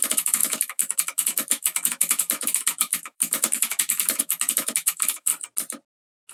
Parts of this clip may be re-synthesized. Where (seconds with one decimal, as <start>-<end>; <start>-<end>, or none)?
0.0-5.3